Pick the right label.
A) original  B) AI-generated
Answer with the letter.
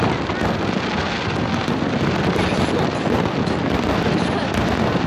A